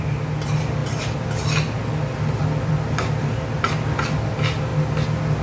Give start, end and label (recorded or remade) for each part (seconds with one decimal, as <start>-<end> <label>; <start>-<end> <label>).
0.0-5.4 recorded